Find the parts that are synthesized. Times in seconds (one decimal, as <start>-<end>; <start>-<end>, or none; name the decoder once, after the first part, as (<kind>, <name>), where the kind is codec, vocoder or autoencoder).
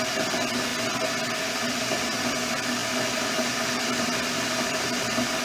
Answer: none